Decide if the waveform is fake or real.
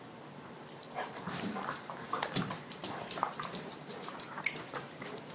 fake